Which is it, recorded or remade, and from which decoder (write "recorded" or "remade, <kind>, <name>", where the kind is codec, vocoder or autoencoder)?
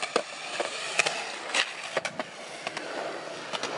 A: recorded